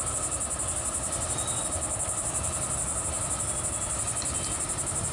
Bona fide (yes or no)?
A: yes